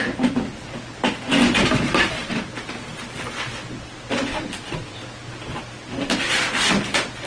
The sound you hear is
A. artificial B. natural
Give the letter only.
B